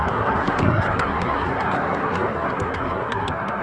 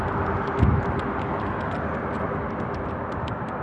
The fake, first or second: first